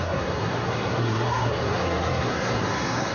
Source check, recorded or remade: remade